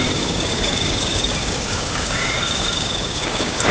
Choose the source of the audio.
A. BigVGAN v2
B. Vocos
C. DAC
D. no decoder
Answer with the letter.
C